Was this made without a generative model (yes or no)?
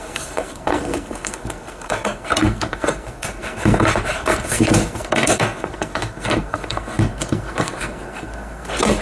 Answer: no